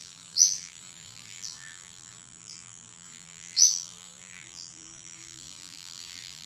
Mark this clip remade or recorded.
remade